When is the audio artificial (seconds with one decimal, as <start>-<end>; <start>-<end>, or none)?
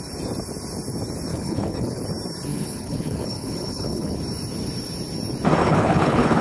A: 1.3-2.0; 2.5-4.2; 5.6-6.4